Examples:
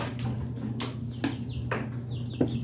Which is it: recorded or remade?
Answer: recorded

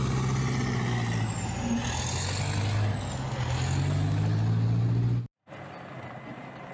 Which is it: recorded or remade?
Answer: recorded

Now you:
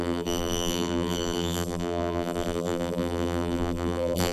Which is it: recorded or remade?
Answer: remade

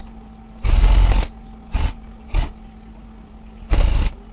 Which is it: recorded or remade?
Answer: recorded